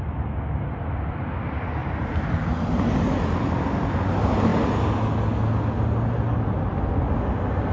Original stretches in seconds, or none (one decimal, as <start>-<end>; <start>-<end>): 0.0-1.8; 3.9-7.7